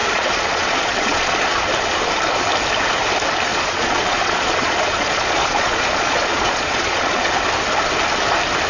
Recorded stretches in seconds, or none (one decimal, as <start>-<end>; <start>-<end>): 1.6-3.5; 7.3-8.7